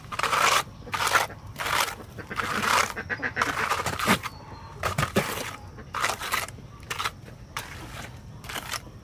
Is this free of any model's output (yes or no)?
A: no